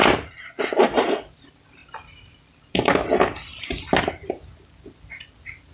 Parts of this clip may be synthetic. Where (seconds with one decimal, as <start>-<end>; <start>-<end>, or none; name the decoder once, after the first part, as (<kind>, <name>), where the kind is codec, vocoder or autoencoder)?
none